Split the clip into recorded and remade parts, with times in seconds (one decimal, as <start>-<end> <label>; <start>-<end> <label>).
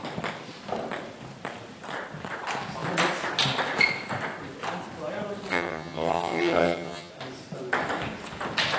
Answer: 0.0-5.5 recorded; 5.5-7.1 remade; 7.1-8.8 recorded